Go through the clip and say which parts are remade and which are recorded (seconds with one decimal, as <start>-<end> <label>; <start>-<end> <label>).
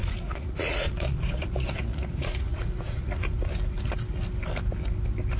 0.0-3.2 remade; 3.2-5.4 recorded